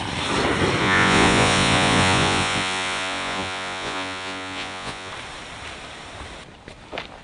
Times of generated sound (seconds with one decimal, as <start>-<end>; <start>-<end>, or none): 0.8-5.1